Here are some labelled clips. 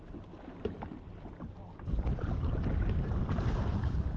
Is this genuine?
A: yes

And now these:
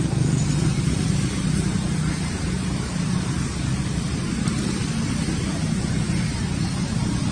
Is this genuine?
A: yes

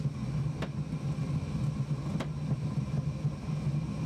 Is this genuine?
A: yes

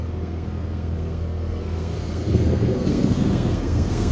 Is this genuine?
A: no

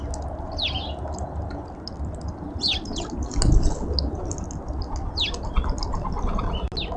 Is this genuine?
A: yes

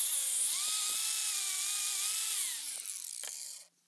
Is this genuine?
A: yes